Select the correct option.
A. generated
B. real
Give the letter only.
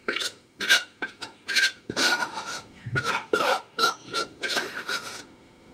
A